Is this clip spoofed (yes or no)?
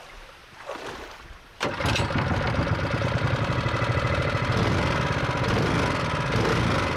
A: no